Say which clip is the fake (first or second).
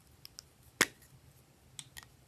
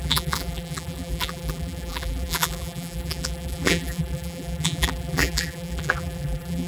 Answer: second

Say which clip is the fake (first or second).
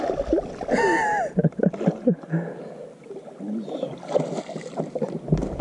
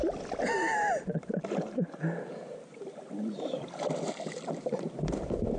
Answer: second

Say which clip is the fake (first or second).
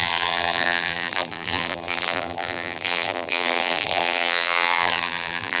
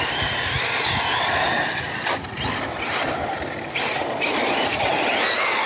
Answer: first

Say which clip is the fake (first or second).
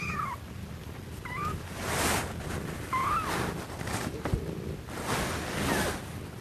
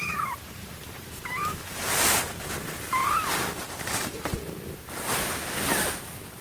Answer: second